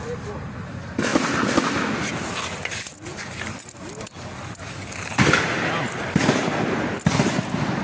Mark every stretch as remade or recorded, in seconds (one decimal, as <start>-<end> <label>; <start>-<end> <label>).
0.0-7.8 recorded